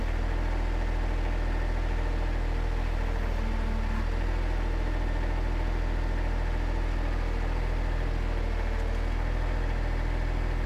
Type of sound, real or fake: real